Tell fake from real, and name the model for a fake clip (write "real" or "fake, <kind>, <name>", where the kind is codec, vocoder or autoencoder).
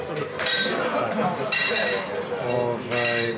real